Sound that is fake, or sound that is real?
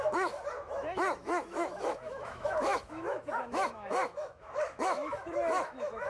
fake